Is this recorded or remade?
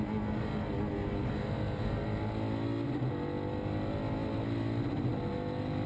recorded